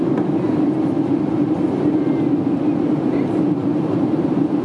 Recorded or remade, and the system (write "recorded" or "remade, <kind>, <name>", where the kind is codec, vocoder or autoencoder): recorded